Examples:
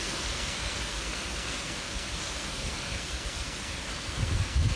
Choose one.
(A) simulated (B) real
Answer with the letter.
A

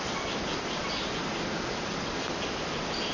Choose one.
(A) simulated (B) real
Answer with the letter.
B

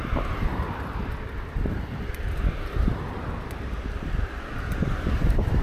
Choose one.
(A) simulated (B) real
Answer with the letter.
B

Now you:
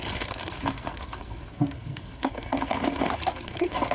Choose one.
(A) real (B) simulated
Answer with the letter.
B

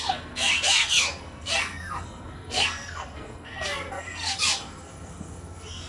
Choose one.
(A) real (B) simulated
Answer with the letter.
B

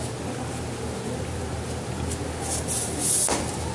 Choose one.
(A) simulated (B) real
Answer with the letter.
B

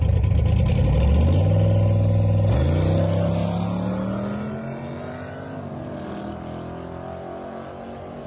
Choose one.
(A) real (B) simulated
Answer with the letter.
A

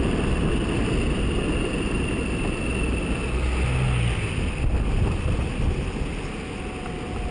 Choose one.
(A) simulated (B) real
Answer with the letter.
B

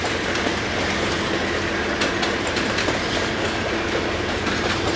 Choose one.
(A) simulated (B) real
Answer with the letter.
B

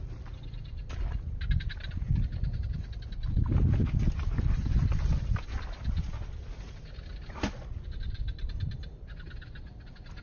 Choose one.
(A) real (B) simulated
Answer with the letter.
A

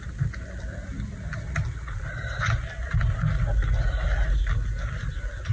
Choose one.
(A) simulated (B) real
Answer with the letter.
B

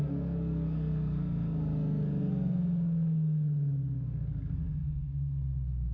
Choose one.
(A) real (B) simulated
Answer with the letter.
B